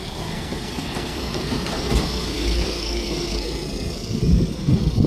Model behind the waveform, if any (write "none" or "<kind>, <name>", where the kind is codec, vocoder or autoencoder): codec, SNAC